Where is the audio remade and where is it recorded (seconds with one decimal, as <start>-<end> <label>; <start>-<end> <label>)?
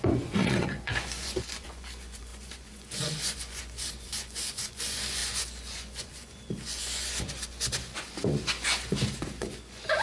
0.0-10.0 remade